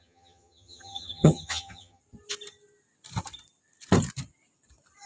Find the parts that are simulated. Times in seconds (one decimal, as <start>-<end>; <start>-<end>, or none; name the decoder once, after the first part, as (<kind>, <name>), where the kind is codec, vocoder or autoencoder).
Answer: 0.0-2.0 (vocoder, HiFi-GAN)